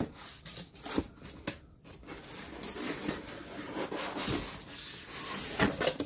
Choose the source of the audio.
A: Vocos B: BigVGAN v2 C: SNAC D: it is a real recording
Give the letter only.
D